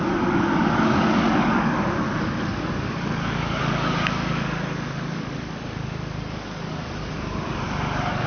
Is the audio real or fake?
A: fake